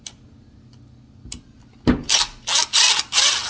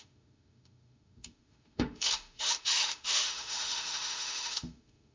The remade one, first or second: second